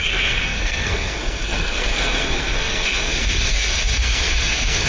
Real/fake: fake